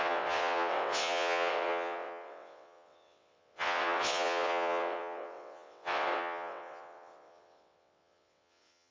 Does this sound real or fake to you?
fake